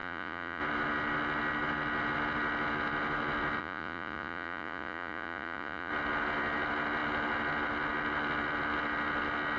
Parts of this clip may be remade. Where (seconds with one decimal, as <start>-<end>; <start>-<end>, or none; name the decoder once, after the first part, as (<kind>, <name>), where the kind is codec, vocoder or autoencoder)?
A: 0.0-0.6 (vocoder, Vocos); 3.6-5.9